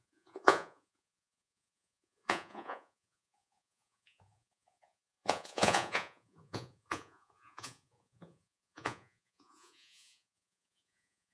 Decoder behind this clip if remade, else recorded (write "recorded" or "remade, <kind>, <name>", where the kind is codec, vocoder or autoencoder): remade, vocoder, Vocos